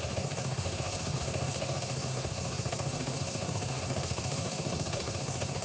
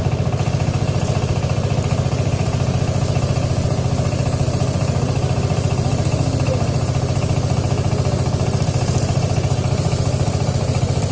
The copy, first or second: first